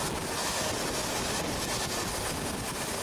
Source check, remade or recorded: recorded